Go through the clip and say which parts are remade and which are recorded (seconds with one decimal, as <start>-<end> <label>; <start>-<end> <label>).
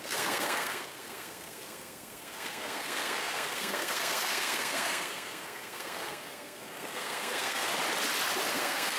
0.0-7.7 remade; 7.7-8.5 recorded; 8.5-9.0 remade